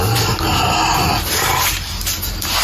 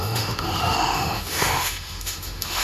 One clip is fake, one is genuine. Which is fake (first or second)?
second